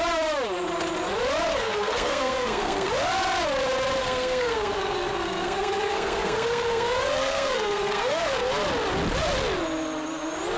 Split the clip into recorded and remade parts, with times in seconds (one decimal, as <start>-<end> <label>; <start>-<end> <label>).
0.0-1.5 recorded; 1.5-2.9 remade; 2.9-4.0 recorded; 4.0-8.5 remade; 8.5-10.6 recorded

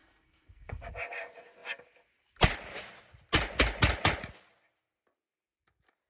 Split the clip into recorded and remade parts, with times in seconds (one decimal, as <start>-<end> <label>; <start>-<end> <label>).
0.0-0.9 remade; 0.9-6.1 recorded

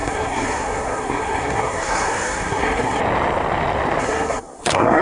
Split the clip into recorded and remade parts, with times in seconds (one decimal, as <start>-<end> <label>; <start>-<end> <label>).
0.0-3.0 remade; 3.0-4.0 recorded; 4.0-5.0 remade

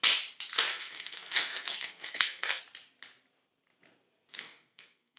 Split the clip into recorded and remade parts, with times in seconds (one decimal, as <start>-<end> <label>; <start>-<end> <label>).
0.0-0.7 recorded; 0.7-2.6 remade; 2.6-4.3 recorded; 4.3-5.2 remade

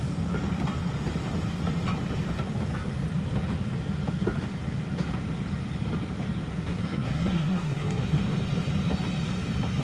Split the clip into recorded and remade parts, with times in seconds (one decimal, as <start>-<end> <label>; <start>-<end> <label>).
0.0-6.5 recorded; 6.5-8.2 remade; 8.2-9.8 recorded

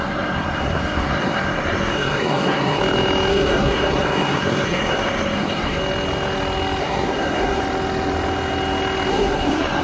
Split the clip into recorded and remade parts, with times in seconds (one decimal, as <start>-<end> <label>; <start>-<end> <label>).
0.0-2.8 remade; 2.8-3.3 recorded; 3.3-5.8 remade; 5.8-6.8 recorded; 6.8-7.6 remade; 7.6-9.1 recorded; 9.1-9.8 remade

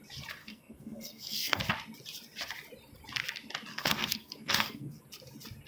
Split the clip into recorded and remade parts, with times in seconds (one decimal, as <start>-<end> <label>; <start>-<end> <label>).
0.0-0.4 recorded; 0.4-1.6 remade; 1.6-3.7 recorded; 3.7-5.0 remade; 5.0-5.7 recorded

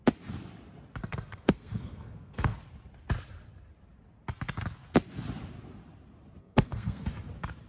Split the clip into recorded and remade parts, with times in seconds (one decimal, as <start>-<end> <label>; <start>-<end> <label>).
0.0-1.0 recorded; 1.0-2.6 remade; 2.6-6.4 recorded; 6.4-7.1 remade; 7.1-7.7 recorded